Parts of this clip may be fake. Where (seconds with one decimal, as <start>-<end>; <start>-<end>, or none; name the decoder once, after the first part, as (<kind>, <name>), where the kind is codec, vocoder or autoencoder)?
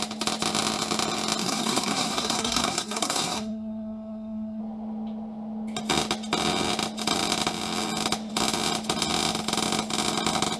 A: 1.4-4.6 (codec, SNAC)